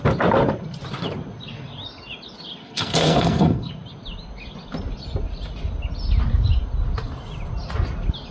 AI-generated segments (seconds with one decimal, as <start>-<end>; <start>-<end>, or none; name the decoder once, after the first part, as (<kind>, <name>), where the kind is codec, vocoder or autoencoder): 2.6-3.7 (codec, SNAC)